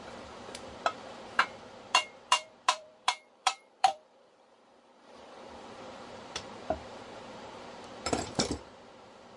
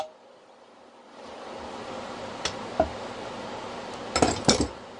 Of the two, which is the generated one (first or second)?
first